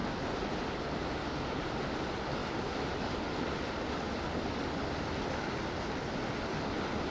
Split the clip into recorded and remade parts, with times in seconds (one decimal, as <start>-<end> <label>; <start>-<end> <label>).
0.0-7.1 recorded